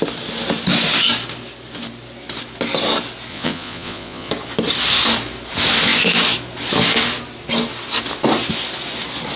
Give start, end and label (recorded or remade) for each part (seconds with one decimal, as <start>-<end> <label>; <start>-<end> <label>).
0.0-3.3 recorded; 3.3-4.3 remade; 4.3-9.4 recorded